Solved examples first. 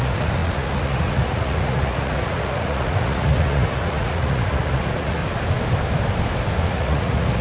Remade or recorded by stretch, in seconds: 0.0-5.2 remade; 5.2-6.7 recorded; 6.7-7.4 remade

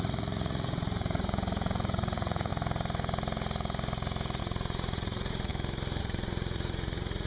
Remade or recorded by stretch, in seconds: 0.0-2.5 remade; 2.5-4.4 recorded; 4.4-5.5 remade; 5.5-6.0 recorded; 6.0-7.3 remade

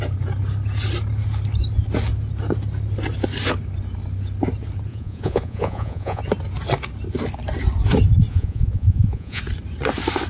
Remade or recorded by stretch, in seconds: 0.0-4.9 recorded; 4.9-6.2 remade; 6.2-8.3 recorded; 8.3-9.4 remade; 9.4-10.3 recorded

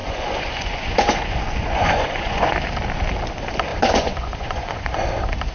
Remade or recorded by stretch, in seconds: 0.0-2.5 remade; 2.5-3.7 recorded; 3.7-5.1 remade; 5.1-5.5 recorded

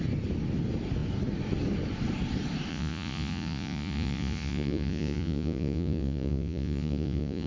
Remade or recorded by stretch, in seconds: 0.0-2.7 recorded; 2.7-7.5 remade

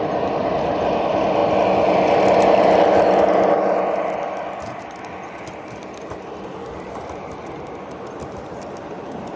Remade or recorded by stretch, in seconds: 0.0-9.4 recorded

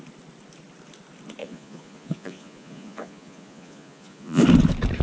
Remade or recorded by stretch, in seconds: 0.0-1.4 recorded; 1.4-4.4 remade; 4.4-5.0 recorded